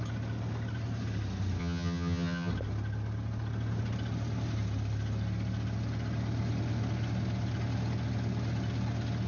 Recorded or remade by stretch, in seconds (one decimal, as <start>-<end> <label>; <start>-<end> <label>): 0.0-1.6 recorded; 1.6-2.5 remade; 2.5-9.3 recorded